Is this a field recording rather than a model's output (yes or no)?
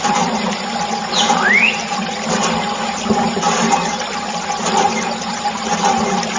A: yes